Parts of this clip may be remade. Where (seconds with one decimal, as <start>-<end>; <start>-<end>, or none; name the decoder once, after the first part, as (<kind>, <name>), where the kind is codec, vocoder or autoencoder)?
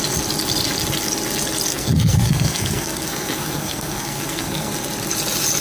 1.7-4.7 (codec, SNAC)